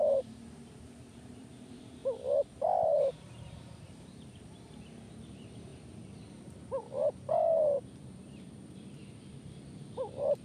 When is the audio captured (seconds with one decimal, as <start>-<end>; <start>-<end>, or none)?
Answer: 2.0-3.0; 9.0-10.0